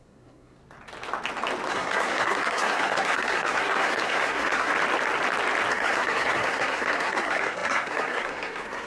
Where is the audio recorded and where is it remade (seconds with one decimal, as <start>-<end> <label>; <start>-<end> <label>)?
0.0-0.6 remade; 0.6-1.7 recorded; 1.7-4.7 remade; 4.7-5.7 recorded; 5.7-8.9 remade